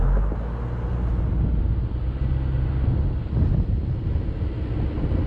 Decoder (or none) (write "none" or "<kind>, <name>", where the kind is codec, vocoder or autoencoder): none